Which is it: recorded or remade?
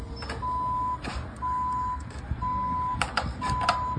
recorded